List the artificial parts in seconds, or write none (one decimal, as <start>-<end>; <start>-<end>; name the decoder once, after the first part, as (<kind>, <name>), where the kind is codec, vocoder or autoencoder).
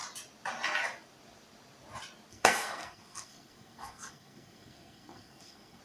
2.3-5.8 (codec, SNAC)